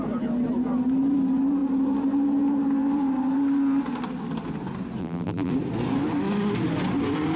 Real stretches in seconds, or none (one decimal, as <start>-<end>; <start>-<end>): 0.0-5.0; 5.5-7.4